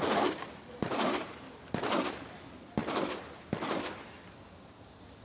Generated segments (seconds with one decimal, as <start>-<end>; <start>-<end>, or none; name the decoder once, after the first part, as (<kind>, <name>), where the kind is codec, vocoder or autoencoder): none